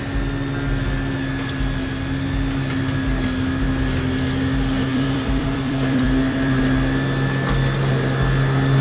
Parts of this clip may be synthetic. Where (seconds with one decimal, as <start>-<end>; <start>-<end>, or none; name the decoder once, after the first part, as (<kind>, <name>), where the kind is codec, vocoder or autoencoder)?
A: 4.9-6.6 (vocoder, BigVGAN v2)